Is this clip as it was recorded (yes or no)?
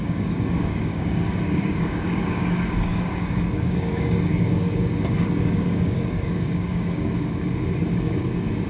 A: no